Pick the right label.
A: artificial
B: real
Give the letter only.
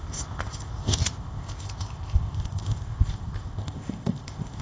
A